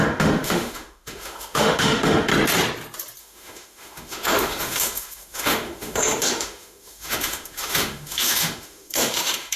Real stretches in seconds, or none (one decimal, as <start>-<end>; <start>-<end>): 2.3-3.2